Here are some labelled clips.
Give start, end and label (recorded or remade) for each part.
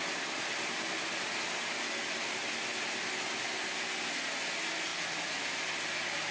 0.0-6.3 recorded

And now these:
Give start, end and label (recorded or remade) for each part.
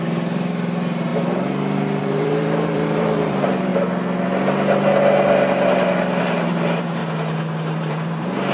0.0-1.1 remade; 1.1-2.0 recorded; 2.0-3.7 remade; 3.7-6.2 recorded; 6.2-7.0 remade; 7.0-7.7 recorded; 7.7-8.5 remade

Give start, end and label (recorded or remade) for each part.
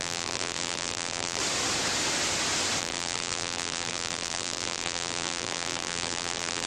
0.0-1.4 remade; 1.4-2.8 recorded; 2.8-6.7 remade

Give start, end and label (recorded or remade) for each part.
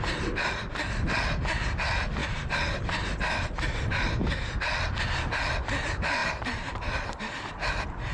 0.0-6.2 recorded; 6.2-6.7 remade; 6.7-8.1 recorded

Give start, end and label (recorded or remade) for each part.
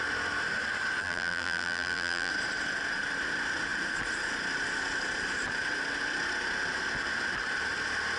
0.0-1.0 recorded; 1.0-2.3 remade; 2.3-8.2 recorded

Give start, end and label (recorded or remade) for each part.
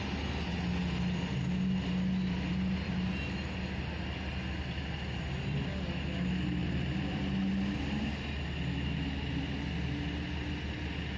0.0-2.5 recorded; 2.5-3.2 remade; 3.2-6.6 recorded; 6.6-7.5 remade; 7.5-11.2 recorded